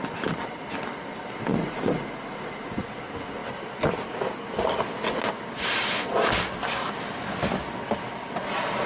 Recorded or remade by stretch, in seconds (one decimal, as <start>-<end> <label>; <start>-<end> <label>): 0.0-1.5 recorded; 1.5-3.0 remade; 3.0-8.9 recorded